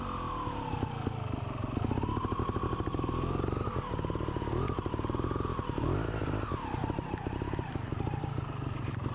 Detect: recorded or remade recorded